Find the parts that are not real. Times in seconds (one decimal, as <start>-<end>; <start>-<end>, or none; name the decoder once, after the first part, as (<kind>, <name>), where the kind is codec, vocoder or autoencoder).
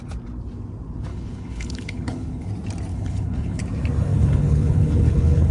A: 1.1-2.5 (codec, HILCodec); 2.9-3.6; 4.1-5.5